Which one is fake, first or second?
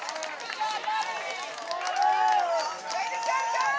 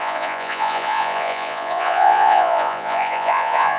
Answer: second